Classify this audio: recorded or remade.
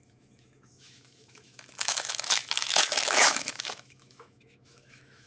remade